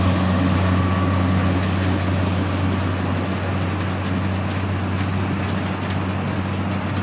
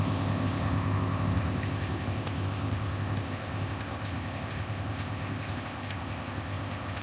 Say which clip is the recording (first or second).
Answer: first